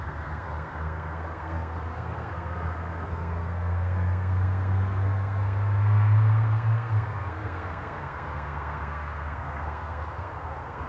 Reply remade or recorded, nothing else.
remade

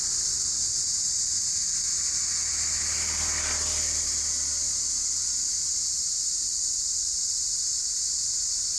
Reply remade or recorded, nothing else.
recorded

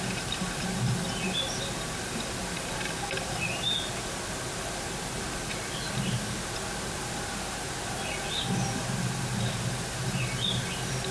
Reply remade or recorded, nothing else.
recorded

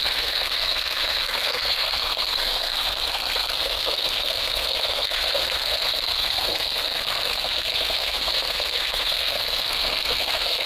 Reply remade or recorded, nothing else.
remade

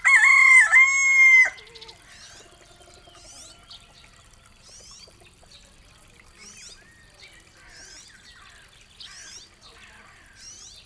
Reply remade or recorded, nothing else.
recorded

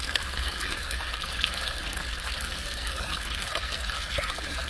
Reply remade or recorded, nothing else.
remade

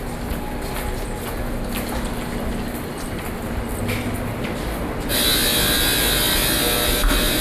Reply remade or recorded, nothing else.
recorded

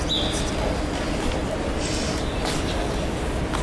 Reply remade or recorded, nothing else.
recorded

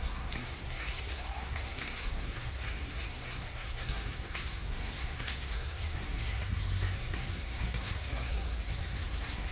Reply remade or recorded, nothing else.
remade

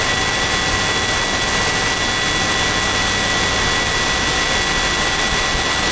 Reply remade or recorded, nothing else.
recorded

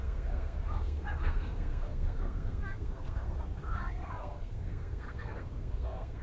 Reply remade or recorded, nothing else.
remade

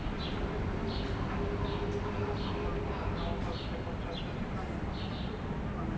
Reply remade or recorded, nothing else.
recorded